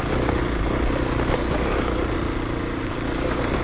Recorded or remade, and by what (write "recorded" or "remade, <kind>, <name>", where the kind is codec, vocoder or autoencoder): recorded